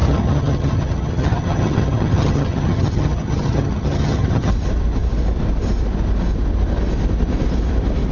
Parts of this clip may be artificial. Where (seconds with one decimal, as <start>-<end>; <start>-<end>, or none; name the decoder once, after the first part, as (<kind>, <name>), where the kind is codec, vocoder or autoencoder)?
0.0-4.5 (vocoder, HiFi-GAN)